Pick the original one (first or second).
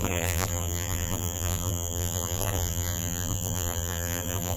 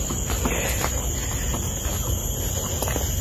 second